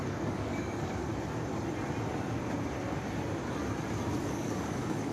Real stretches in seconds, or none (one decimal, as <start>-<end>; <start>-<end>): 1.1-4.2